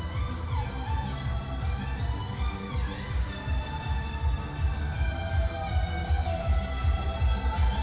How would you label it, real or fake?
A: real